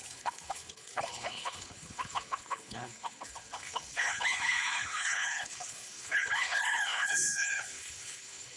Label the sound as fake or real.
fake